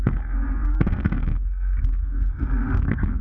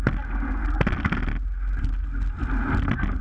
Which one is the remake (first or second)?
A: first